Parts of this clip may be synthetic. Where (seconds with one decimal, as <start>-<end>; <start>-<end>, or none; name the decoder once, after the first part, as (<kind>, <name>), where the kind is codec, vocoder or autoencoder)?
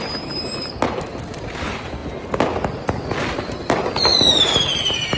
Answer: 0.0-0.4 (vocoder, BigVGAN v2); 1.3-2.0; 4.4-5.2